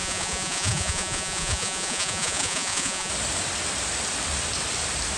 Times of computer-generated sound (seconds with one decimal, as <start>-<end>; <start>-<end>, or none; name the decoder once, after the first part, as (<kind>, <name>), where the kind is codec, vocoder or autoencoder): 0.0-3.1 (vocoder, Vocos)